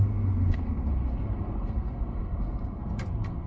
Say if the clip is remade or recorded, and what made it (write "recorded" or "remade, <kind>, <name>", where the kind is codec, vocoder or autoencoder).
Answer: remade, codec, SNAC